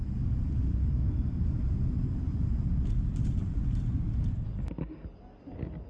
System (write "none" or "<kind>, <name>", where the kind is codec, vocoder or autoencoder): none